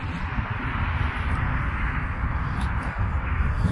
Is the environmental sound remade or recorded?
recorded